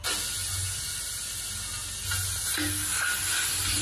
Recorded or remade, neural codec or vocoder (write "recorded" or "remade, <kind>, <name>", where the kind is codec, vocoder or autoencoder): recorded